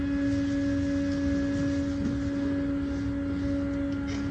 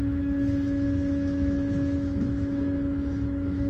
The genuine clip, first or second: first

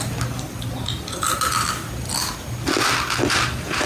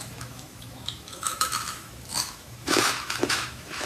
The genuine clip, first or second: first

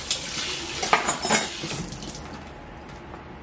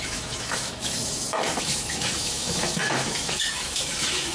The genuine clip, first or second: first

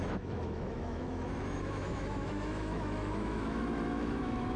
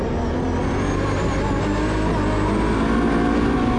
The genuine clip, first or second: second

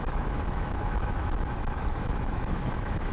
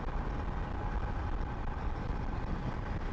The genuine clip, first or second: second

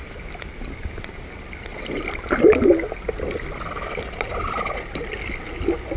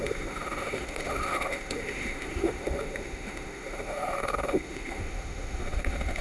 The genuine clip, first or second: first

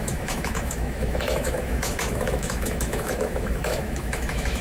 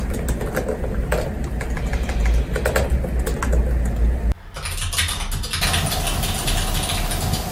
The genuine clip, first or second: second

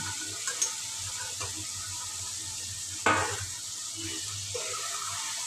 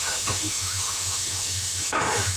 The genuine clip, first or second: first